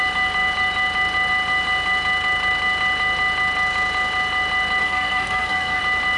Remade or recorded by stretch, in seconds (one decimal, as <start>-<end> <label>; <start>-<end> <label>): 0.0-4.8 recorded; 4.8-5.8 remade; 5.8-6.2 recorded